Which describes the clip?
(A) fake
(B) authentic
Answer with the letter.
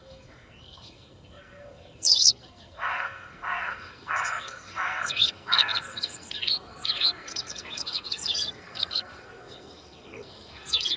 A